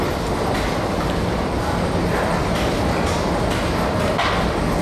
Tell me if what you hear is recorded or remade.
recorded